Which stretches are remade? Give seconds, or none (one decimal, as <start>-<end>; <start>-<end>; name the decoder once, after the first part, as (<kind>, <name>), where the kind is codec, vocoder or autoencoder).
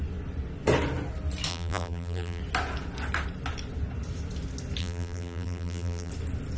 1.5-2.4 (vocoder, BigVGAN v2); 4.8-6.1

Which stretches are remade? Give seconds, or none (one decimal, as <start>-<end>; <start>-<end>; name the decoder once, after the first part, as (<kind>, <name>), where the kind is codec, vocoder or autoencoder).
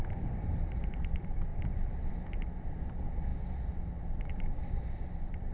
0.0-1.0 (vocoder, BigVGAN v2); 1.5-2.1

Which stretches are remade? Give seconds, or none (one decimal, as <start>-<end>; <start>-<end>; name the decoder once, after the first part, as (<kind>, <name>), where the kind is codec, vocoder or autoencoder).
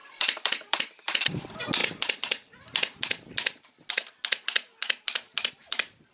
0.0-1.8 (vocoder, BigVGAN v2); 5.5-6.1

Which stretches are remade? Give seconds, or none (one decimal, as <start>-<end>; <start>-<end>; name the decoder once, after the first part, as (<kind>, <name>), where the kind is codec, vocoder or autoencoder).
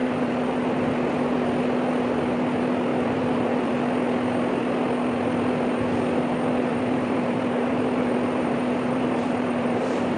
0.0-0.9 (vocoder, BigVGAN v2); 2.9-3.8; 6.7-10.2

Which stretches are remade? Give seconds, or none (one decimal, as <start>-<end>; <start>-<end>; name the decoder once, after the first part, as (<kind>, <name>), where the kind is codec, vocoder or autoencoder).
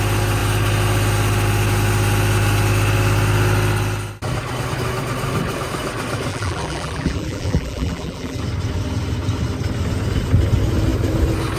6.3-8.4 (vocoder, BigVGAN v2)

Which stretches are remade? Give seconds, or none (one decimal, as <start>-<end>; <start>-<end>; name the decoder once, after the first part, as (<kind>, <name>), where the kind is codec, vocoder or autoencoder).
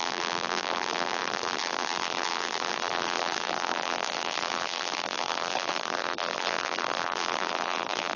0.0-8.2 (vocoder, BigVGAN v2)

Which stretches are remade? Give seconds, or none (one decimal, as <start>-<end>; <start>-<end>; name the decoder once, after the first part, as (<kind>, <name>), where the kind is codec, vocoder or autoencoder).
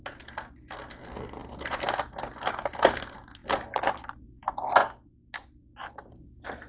1.4-2.5 (vocoder, BigVGAN v2)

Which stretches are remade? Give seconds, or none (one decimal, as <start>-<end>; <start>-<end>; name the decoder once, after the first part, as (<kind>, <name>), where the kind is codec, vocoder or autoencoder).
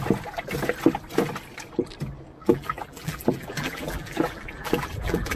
2.4-5.4 (vocoder, BigVGAN v2)